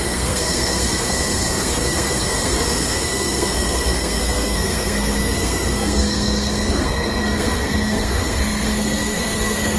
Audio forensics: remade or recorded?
remade